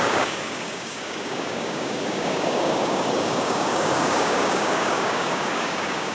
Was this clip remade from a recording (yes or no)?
yes